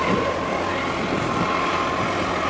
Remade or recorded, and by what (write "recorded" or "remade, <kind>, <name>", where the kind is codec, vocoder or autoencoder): recorded